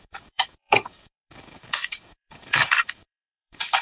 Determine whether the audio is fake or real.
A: fake